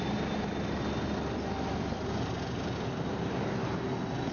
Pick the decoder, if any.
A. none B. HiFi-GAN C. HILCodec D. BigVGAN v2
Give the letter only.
A